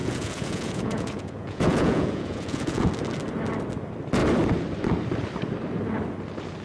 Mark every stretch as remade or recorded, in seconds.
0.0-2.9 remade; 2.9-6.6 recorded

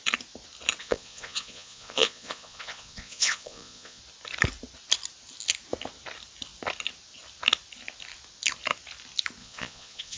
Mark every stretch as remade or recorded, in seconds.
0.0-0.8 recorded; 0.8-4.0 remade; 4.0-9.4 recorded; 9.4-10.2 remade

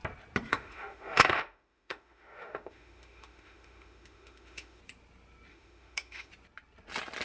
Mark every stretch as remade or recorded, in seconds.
0.0-0.5 recorded; 0.5-4.8 remade; 4.8-5.5 recorded; 5.5-6.3 remade; 6.3-7.2 recorded